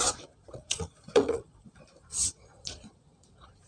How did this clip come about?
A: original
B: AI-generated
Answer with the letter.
B